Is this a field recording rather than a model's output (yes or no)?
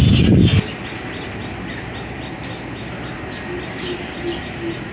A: yes